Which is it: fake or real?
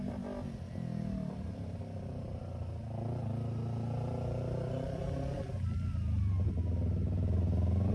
real